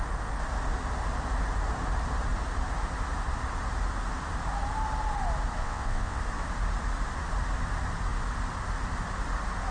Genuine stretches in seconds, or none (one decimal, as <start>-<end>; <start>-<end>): 0.0-5.6; 6.2-9.7